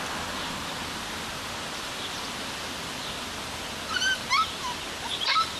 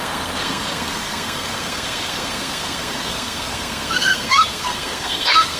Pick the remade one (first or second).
second